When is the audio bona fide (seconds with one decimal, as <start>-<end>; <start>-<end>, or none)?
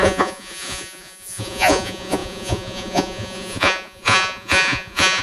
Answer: none